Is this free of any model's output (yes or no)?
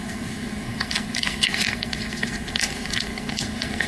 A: no